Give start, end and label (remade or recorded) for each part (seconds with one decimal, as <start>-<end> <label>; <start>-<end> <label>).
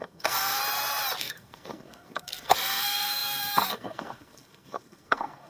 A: 0.0-0.6 remade; 0.6-1.2 recorded; 1.2-5.5 remade